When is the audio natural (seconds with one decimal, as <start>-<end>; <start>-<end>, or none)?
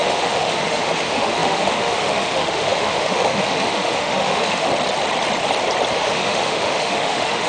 4.7-5.9